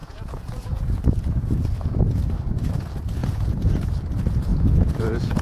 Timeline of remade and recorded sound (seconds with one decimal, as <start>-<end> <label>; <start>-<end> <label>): 0.0-2.2 remade; 2.2-3.2 recorded; 3.2-3.8 remade; 3.8-4.5 recorded; 4.5-5.4 remade